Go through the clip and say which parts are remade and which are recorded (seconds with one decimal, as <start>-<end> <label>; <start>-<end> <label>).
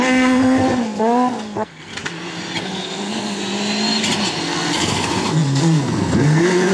0.0-1.9 remade; 1.9-2.6 recorded; 2.6-3.4 remade; 3.4-4.4 recorded; 4.4-6.7 remade